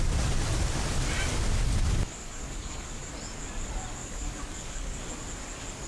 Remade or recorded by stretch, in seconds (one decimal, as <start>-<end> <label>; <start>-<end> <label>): 0.0-2.2 recorded; 2.2-3.0 remade; 3.0-4.0 recorded; 4.0-5.0 remade; 5.0-5.9 recorded